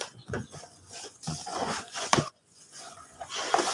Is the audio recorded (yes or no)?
no